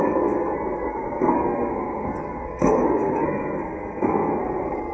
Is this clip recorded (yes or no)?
no